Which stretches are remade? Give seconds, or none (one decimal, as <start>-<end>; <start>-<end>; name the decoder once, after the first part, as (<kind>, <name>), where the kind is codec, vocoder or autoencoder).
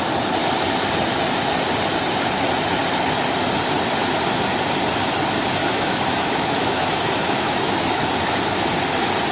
5.6-8.1 (autoencoder, DAC-VAE)